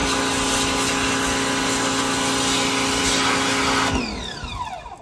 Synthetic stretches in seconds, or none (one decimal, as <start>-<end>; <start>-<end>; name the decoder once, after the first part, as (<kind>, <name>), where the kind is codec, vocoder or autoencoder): none